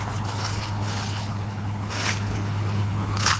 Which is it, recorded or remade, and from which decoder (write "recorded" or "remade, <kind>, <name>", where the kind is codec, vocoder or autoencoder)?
remade, codec, HILCodec